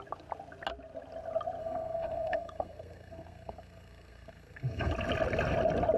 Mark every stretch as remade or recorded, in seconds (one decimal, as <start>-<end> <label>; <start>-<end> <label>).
0.0-1.6 recorded; 1.6-4.9 remade; 4.9-6.0 recorded